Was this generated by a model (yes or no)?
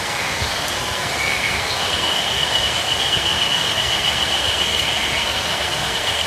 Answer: yes